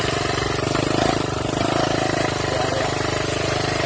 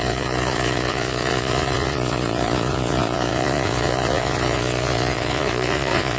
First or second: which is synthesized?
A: second